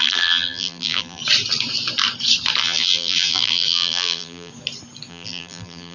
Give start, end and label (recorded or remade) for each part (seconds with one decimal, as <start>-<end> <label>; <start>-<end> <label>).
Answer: 0.0-1.2 remade; 1.2-2.6 recorded; 2.6-4.5 remade; 4.5-5.1 recorded; 5.1-5.9 remade